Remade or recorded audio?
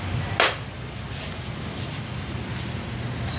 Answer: recorded